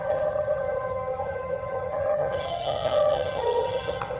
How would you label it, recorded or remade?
remade